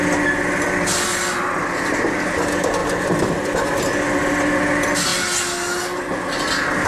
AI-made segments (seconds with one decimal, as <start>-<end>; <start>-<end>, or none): none